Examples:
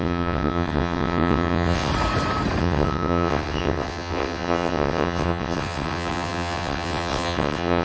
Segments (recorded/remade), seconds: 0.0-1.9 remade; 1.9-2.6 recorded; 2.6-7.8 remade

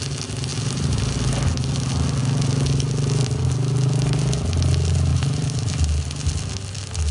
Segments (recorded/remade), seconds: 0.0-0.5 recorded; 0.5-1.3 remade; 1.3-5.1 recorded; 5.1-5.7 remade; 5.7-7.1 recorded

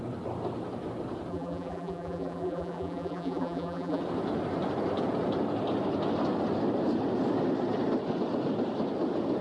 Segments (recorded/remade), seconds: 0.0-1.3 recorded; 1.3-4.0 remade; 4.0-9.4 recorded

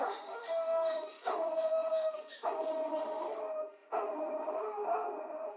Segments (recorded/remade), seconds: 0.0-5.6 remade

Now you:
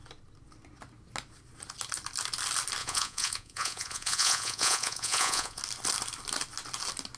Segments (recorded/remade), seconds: 0.0-2.8 recorded; 2.8-5.6 remade; 5.6-7.2 recorded

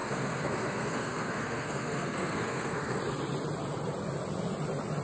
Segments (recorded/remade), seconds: 0.0-3.0 remade; 3.0-5.0 recorded

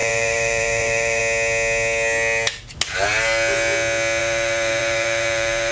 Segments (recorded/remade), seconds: 0.0-1.2 remade; 1.2-4.2 recorded; 4.2-5.7 remade

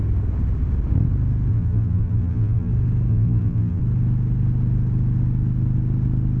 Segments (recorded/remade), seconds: 0.0-1.5 recorded; 1.5-2.7 remade; 2.7-3.1 recorded; 3.1-3.8 remade; 3.8-6.4 recorded